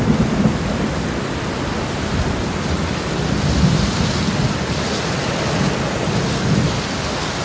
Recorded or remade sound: recorded